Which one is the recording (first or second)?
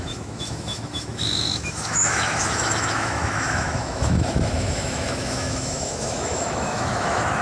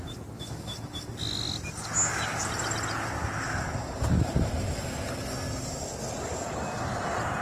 second